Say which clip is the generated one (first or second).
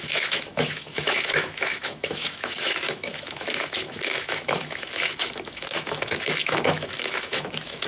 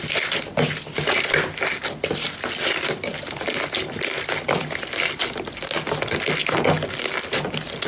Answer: first